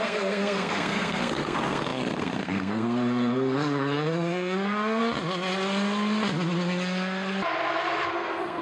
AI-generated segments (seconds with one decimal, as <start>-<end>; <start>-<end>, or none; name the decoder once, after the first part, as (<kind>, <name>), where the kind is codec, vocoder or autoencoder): 0.0-5.0 (codec, SNAC); 8.1-8.6